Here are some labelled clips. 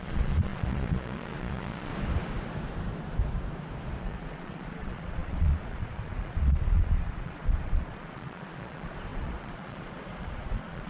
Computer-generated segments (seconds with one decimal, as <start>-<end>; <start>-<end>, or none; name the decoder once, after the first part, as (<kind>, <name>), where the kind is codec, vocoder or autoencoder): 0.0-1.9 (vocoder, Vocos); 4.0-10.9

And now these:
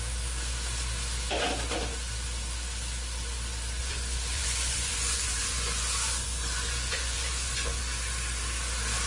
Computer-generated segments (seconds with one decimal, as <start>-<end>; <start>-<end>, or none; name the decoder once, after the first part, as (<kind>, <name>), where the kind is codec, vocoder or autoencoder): 3.8-7.8 (vocoder, Vocos)

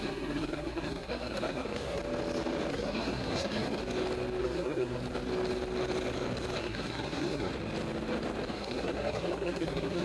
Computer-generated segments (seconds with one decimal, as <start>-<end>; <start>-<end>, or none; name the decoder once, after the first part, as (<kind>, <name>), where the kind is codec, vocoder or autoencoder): 0.0-2.0 (codec, SNAC); 2.7-3.8; 4.4-5.0; 6.6-7.5; 8.5-10.0

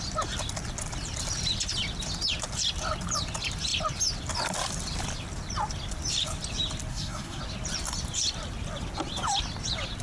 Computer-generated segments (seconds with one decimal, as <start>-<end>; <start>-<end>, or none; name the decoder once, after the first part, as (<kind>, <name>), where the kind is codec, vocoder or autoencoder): 6.9-7.4 (codec, SNAC)